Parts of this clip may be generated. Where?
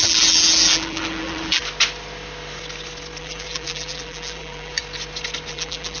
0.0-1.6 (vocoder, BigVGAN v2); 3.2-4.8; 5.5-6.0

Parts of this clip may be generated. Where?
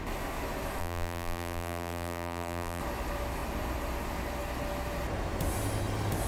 0.8-2.8 (vocoder, BigVGAN v2)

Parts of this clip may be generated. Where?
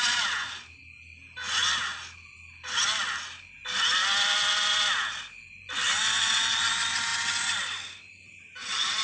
none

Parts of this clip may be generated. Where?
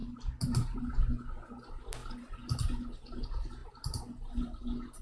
0.0-0.8 (vocoder, BigVGAN v2); 3.6-4.6